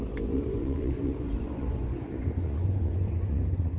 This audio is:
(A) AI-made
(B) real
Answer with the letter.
A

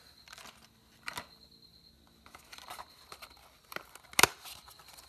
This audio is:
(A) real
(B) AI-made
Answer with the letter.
A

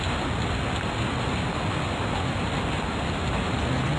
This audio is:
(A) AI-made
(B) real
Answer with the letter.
B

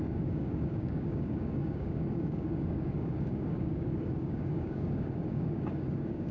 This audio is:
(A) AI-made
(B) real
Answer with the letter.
A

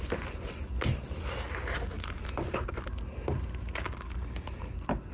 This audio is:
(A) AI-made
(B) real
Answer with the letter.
B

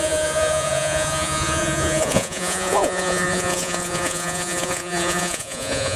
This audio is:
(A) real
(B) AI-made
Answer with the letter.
B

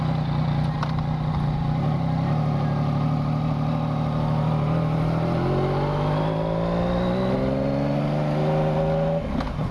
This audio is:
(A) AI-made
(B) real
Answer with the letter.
B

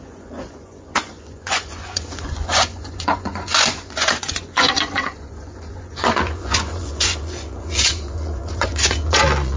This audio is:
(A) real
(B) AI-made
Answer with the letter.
B